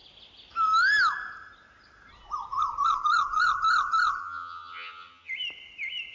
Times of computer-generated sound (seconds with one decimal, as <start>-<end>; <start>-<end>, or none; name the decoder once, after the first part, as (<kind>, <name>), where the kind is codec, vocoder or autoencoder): 4.2-5.3 (vocoder, HiFi-GAN)